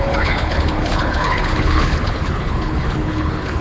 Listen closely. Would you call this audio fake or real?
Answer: fake